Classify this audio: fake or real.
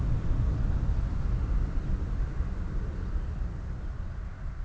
real